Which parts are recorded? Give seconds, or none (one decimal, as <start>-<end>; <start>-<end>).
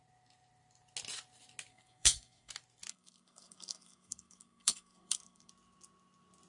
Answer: 0.0-1.7; 2.5-2.9; 5.5-6.5